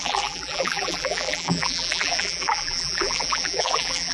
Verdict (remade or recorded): remade